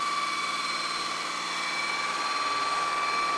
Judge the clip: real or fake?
real